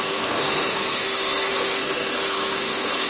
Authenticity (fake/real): fake